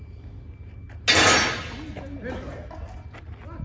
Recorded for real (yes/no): yes